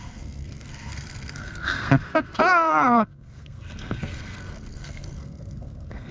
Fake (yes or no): yes